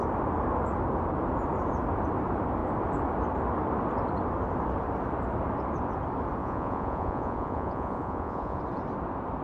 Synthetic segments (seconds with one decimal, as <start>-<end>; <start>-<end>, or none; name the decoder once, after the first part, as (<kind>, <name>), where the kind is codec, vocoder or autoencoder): 6.4-8.6 (vocoder, Vocos)